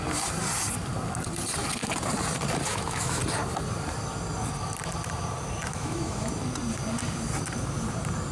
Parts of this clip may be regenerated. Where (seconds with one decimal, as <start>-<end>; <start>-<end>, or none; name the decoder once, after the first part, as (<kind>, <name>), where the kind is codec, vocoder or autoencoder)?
2.7-3.2 (autoencoder, DAC-VAE); 5.7-6.3